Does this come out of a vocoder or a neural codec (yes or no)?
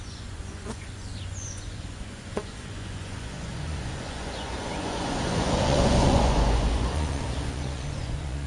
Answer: yes